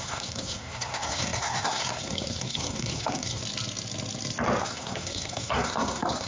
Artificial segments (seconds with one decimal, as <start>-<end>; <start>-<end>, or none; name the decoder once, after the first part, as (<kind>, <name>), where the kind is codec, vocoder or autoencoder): 0.0-3.4 (codec, SNAC); 4.6-6.3

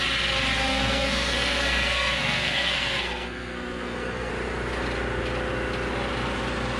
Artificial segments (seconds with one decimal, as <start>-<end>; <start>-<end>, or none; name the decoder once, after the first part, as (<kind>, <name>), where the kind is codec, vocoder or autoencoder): 0.7-4.3 (codec, SNAC)